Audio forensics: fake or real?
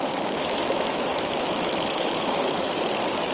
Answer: fake